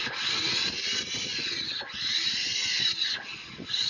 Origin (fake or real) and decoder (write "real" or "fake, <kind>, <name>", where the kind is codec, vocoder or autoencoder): real